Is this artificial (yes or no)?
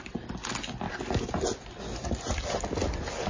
no